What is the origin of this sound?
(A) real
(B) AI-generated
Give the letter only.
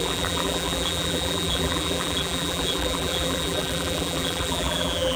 B